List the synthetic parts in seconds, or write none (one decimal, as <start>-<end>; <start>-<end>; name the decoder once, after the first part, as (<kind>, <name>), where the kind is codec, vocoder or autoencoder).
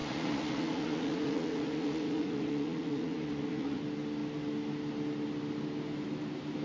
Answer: 0.0-3.8 (vocoder, Vocos)